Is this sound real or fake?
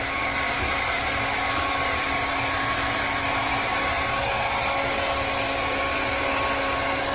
real